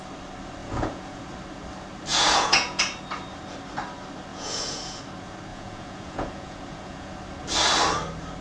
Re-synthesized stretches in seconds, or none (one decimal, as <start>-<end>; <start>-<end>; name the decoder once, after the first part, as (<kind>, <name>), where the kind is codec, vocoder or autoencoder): 0.6-1.2 (vocoder, Vocos); 2.1-2.8; 4.3-5.0; 5.5-7.1